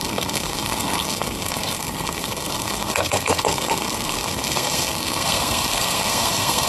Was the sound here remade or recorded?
remade